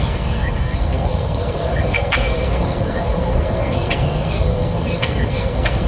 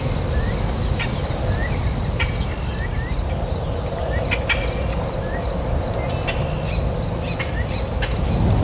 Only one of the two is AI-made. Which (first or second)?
first